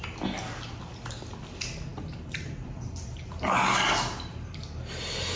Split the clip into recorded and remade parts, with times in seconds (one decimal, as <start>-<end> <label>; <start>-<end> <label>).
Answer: 0.0-5.4 recorded